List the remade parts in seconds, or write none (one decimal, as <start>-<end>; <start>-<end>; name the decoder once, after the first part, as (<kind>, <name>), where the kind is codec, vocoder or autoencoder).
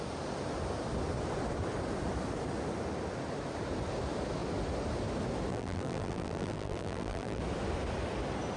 5.5-7.4 (vocoder, BigVGAN v2)